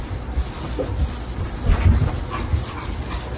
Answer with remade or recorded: remade